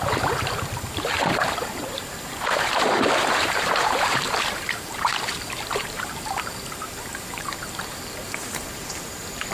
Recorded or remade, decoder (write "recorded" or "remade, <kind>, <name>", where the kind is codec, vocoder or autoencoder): remade, vocoder, BigVGAN v2